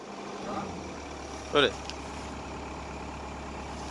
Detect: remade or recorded recorded